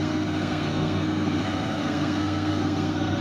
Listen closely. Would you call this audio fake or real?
fake